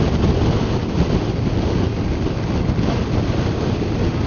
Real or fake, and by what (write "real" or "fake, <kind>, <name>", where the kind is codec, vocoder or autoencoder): real